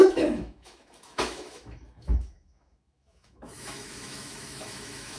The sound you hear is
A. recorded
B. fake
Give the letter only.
B